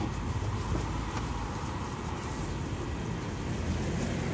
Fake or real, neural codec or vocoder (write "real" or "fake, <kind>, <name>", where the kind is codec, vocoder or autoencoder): real